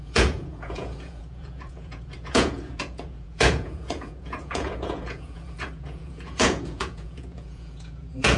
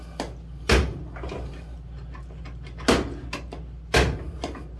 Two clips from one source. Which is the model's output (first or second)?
first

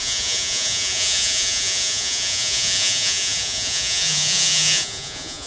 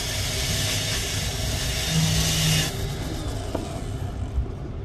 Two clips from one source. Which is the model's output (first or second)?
first